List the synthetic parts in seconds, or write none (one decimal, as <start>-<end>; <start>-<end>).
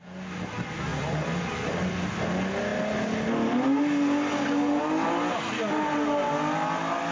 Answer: none